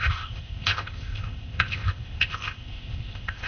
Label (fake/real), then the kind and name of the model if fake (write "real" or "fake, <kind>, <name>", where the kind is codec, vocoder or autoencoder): fake, codec, ZipCodec